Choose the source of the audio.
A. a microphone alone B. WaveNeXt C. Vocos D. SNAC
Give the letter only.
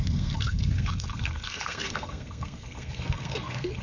D